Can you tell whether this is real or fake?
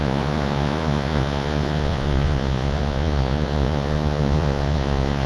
fake